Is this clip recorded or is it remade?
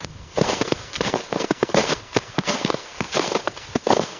remade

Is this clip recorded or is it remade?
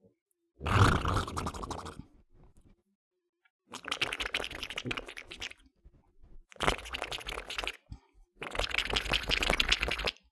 recorded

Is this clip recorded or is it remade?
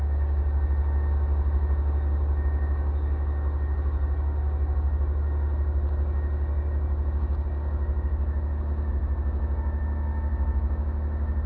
recorded